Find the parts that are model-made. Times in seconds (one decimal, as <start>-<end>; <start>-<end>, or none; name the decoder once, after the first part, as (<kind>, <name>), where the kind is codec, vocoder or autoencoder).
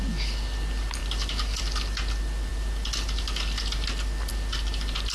none